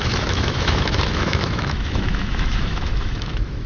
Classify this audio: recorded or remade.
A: remade